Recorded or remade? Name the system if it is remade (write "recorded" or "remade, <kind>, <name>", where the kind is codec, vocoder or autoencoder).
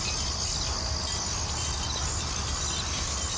recorded